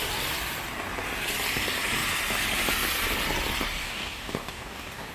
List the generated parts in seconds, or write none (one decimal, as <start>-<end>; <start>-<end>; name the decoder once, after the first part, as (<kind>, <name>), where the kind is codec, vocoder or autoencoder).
3.8-5.1 (codec, DAC)